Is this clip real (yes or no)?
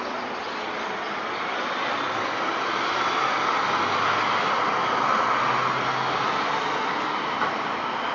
yes